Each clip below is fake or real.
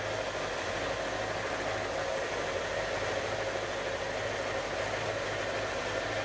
real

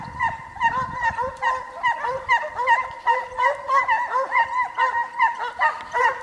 real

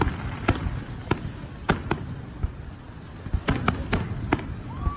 real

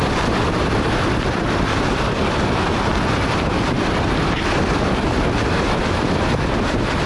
fake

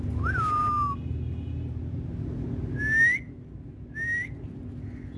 real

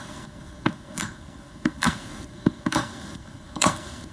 fake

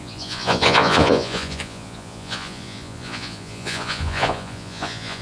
fake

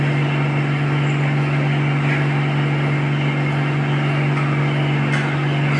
real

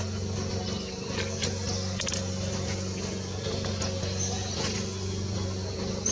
real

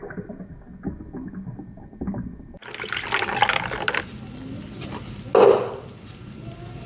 real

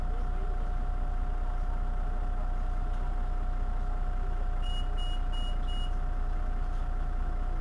real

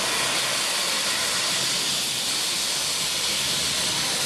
real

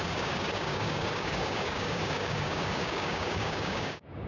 fake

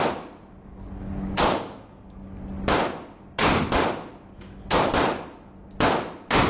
real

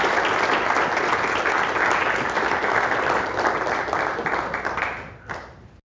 real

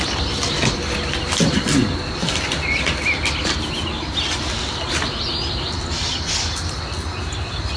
real